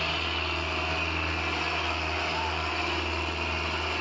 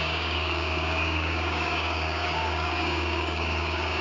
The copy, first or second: second